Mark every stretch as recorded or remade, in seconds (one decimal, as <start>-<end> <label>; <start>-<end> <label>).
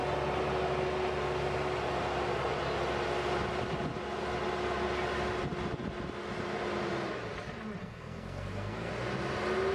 0.0-7.8 recorded; 7.8-8.9 remade; 8.9-9.7 recorded